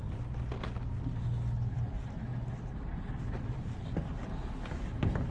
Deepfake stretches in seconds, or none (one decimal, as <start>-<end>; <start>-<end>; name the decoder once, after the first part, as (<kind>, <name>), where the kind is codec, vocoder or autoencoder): none